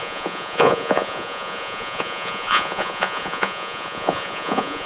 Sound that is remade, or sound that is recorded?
remade